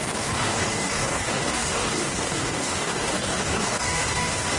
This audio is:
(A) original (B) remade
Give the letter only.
B